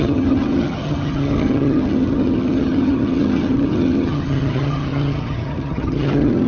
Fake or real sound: fake